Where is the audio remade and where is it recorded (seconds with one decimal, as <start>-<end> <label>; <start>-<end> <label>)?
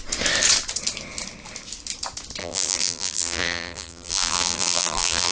0.0-2.4 recorded; 2.4-5.3 remade